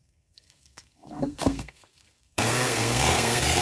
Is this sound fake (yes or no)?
yes